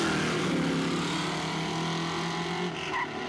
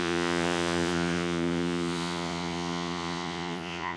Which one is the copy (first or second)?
second